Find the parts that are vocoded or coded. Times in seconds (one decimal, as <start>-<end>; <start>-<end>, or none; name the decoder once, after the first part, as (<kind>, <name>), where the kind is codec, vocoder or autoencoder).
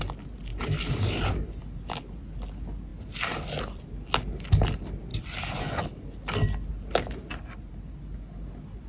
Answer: 0.5-1.8 (vocoder, BigVGAN v2)